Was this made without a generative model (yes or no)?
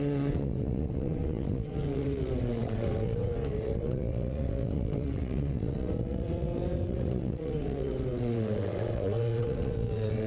no